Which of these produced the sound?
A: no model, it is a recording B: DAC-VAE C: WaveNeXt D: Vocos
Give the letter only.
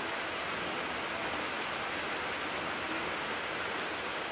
A